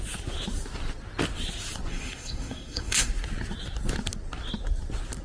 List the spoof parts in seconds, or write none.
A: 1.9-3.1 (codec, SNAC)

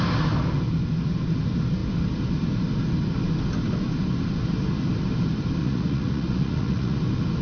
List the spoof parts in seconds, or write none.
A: 5.6-7.0 (vocoder, Vocos)